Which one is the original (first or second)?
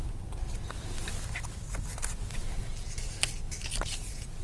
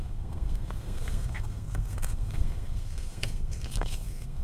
first